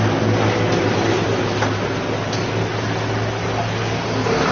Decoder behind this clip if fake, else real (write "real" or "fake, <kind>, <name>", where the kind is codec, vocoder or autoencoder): real